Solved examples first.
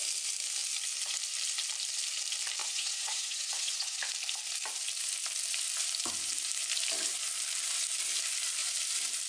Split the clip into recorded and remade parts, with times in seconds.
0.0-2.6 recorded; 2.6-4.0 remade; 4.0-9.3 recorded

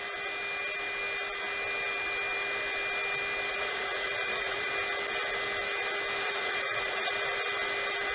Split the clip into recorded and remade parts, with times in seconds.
0.0-3.5 recorded; 3.5-4.7 remade; 4.7-6.2 recorded; 6.2-7.1 remade; 7.1-8.1 recorded

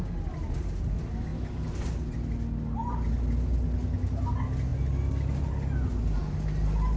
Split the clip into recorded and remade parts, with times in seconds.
0.0-7.0 recorded

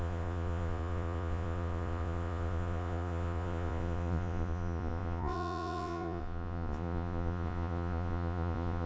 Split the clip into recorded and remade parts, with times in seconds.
0.0-8.9 remade

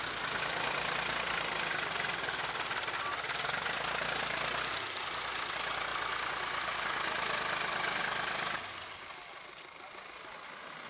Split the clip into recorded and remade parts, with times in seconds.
0.0-10.9 recorded